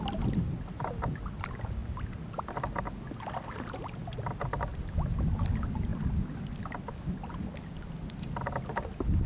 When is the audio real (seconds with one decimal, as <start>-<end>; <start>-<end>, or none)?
0.0-9.3